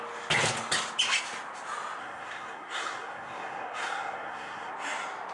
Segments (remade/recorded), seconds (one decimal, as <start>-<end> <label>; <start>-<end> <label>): 0.0-2.0 recorded; 2.0-4.7 remade; 4.7-5.3 recorded